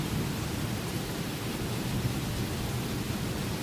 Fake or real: real